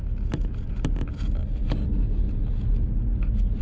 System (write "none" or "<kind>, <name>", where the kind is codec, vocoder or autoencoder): none